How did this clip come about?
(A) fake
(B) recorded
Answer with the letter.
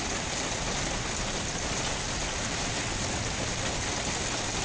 B